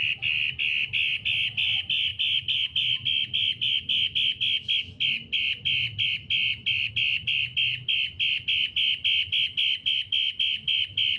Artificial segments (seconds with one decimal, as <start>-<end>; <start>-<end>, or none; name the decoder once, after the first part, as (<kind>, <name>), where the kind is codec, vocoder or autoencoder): none